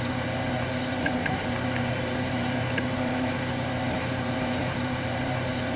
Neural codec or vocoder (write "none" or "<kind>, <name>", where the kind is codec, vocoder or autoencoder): vocoder, BigVGAN v2